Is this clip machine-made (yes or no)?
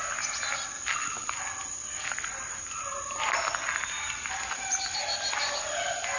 no